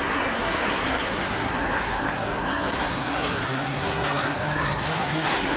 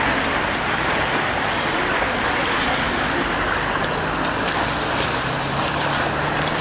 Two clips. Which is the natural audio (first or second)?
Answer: second